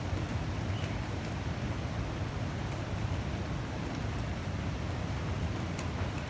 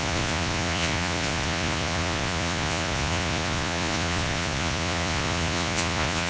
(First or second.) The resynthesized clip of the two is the second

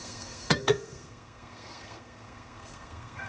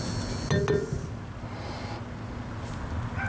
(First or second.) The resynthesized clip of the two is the first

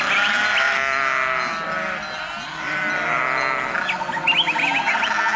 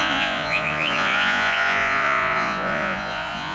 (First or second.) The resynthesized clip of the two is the second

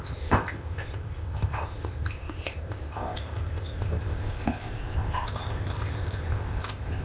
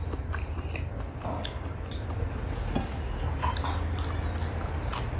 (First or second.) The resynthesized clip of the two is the first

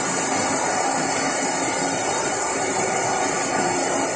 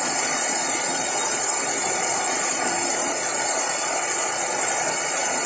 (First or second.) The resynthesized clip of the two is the second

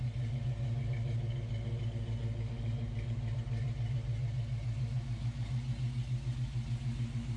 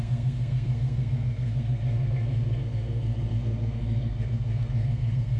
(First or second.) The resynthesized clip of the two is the second